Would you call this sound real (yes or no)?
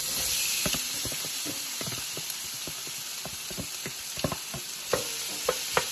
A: yes